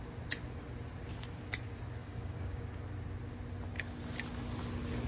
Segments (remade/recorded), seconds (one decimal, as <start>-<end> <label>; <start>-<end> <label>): 0.0-2.0 recorded; 2.0-2.6 remade; 2.6-5.1 recorded